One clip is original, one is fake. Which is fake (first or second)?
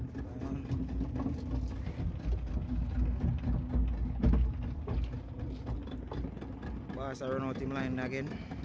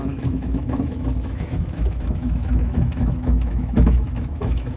second